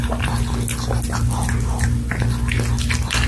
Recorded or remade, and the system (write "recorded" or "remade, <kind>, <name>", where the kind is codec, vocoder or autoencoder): recorded